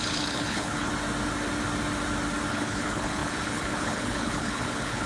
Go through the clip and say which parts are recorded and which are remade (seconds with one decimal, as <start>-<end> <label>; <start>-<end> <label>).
0.0-0.9 remade; 0.9-2.5 recorded; 2.5-5.1 remade